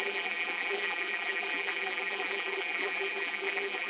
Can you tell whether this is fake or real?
fake